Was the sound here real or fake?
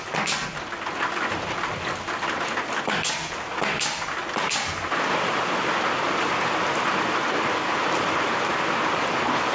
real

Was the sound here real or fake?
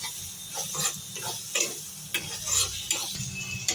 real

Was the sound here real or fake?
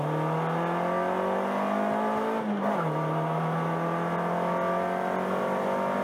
real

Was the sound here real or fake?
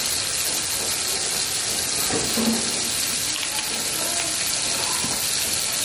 real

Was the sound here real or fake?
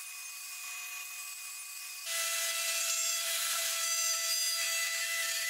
fake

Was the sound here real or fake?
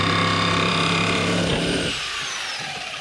fake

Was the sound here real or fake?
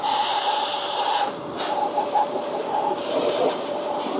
fake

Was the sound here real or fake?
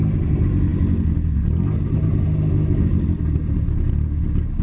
real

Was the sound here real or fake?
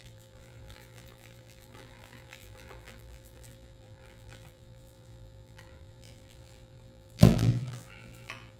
fake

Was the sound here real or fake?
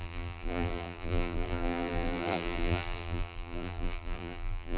fake